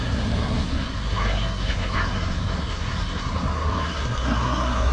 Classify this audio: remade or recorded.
remade